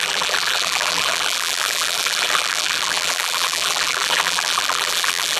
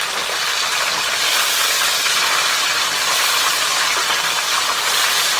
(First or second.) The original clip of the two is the second